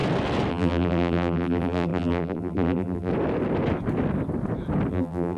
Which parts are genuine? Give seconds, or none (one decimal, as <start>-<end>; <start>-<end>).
0.0-0.5; 3.1-4.9